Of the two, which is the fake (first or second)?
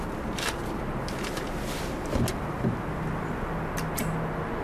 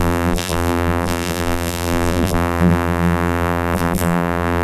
second